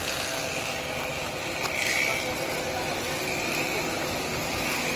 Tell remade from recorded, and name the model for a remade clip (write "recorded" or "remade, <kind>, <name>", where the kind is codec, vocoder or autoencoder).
recorded